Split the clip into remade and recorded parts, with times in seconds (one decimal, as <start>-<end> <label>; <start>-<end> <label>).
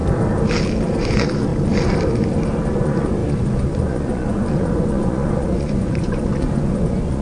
0.0-1.0 recorded; 1.0-1.5 remade; 1.5-2.7 recorded; 2.7-7.2 remade